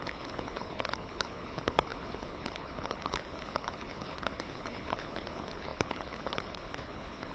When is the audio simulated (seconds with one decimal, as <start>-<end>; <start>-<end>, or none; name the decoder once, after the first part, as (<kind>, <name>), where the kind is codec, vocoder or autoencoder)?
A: 0.0-7.3 (codec, HILCodec)